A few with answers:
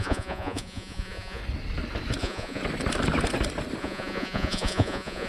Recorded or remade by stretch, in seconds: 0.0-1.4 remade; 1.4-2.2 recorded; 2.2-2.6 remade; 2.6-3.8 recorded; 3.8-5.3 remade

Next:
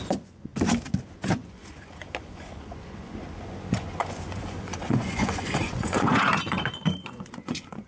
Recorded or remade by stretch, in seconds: 0.0-0.5 remade; 0.5-1.1 recorded; 1.1-7.9 remade

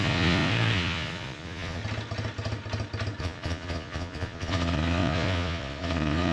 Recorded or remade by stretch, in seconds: 0.0-1.8 remade; 1.8-3.2 recorded; 3.2-6.3 remade